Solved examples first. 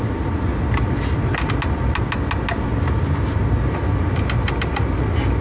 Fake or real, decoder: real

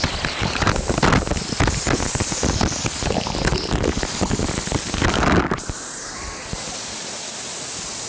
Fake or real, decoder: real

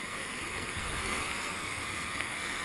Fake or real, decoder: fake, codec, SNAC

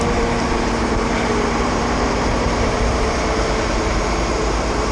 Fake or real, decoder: fake, vocoder, BigVGAN v2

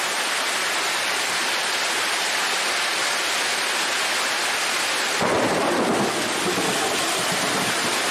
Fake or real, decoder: real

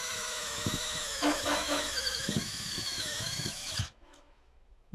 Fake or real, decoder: fake, autoencoder, DAC-VAE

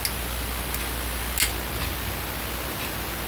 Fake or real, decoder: real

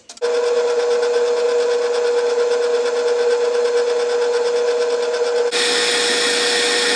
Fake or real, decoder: real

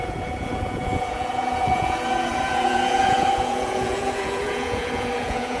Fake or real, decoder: fake, vocoder, Vocos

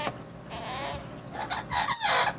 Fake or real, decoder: real